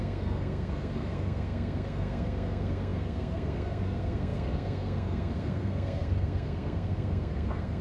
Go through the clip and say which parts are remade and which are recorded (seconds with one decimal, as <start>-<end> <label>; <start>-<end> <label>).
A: 0.0-7.8 remade